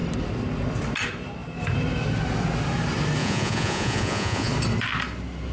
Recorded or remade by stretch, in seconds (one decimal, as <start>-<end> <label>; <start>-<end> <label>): 0.0-3.2 recorded; 3.2-4.5 remade; 4.5-5.5 recorded